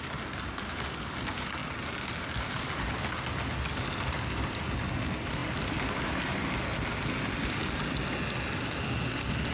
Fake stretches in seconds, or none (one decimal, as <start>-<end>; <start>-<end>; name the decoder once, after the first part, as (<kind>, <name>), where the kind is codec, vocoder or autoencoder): none